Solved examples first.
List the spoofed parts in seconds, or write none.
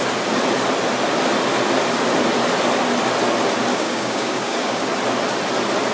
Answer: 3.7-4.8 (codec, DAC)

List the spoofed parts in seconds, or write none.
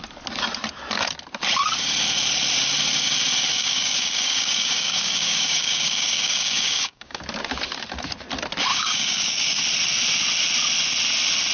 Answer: 3.5-7.2 (codec, DAC); 8.7-9.6